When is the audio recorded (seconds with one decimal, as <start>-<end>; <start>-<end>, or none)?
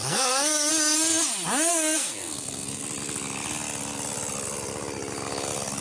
0.7-1.7; 2.8-5.8